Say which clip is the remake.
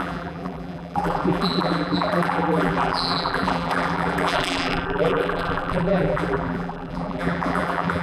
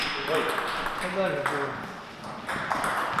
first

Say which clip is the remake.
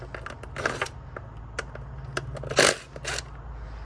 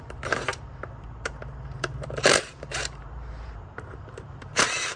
second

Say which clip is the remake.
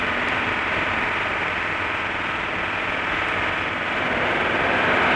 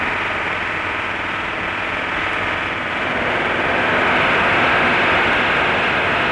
first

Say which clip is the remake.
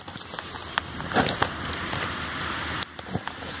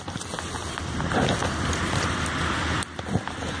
first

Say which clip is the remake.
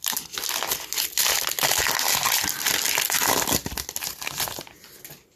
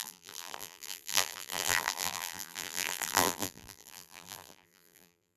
second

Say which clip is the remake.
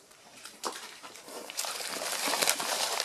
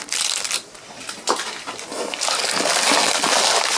first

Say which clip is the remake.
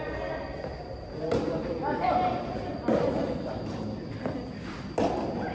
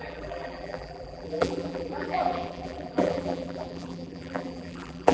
second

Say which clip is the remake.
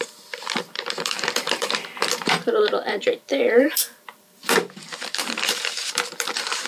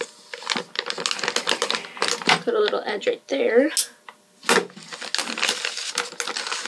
first